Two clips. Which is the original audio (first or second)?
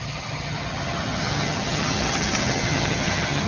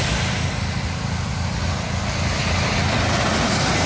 second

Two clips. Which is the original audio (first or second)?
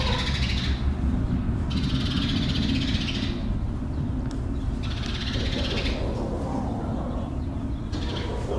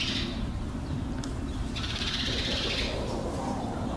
first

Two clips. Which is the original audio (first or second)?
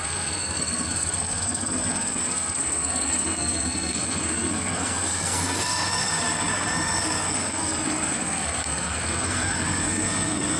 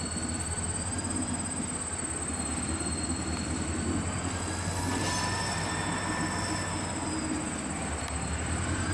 second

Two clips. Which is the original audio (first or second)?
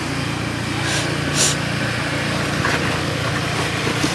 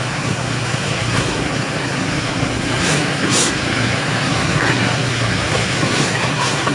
first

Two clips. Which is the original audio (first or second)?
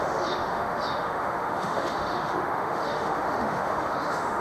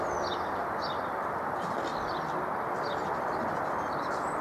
second